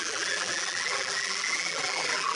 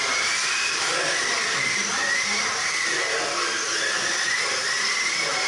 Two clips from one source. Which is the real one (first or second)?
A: second